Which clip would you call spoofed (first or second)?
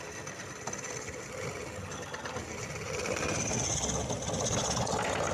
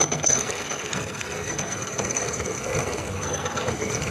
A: second